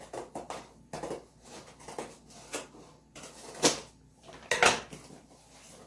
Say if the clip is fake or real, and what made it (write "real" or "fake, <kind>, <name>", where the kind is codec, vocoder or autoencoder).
real